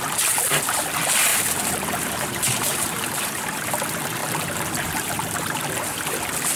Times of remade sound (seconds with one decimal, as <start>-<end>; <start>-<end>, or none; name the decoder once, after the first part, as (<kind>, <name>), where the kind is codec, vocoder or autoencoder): 1.3-3.7 (vocoder, BigVGAN v2); 4.2-6.1